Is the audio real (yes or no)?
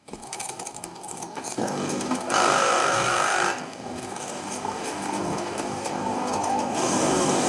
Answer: no